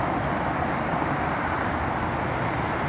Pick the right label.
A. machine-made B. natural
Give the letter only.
B